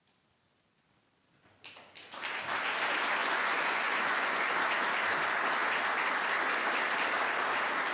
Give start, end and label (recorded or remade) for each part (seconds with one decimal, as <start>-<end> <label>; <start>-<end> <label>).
0.0-3.2 recorded; 3.2-4.5 remade; 4.5-7.9 recorded